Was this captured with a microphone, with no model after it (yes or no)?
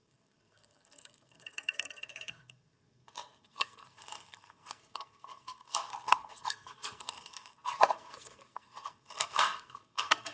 no